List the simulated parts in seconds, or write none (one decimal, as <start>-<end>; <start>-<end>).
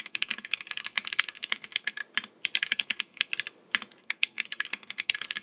0.0-2.0; 2.6-3.3; 4.0-5.4